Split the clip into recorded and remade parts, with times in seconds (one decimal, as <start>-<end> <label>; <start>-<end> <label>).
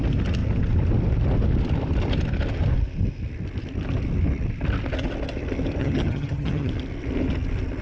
0.0-5.8 recorded; 5.8-6.7 remade; 6.7-7.8 recorded